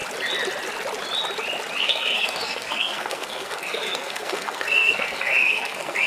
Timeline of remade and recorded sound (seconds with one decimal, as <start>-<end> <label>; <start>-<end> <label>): 0.0-1.8 recorded; 1.8-6.1 remade